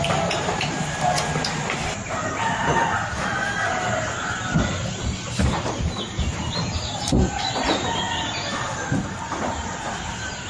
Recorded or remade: recorded